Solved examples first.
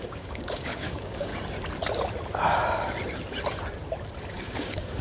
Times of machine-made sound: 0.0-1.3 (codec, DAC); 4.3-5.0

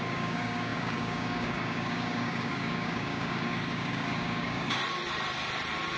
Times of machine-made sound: 0.0-4.8 (codec, DAC)

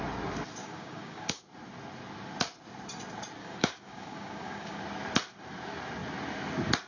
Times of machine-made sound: 0.6-1.4 (codec, DAC); 3.4-4.8

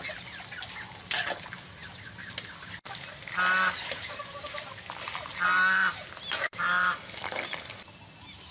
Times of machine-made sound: none

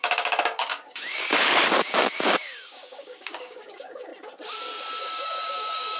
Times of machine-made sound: 0.0-4.1 (codec, DAC); 5.0-6.0

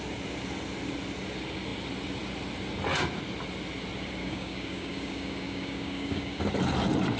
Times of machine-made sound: 4.2-6.5 (codec, DAC)